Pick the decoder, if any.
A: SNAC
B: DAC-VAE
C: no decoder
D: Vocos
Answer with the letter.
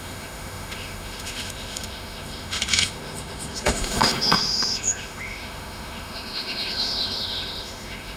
B